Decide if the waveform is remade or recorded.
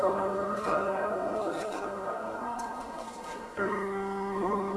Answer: remade